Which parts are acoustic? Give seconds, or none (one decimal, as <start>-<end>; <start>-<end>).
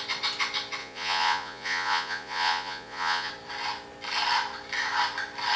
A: 0.0-0.8; 3.3-5.6